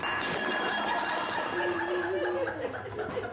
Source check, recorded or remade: recorded